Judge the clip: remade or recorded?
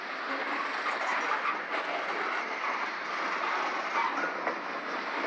recorded